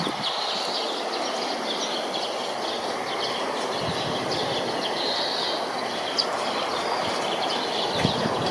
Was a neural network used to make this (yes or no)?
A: no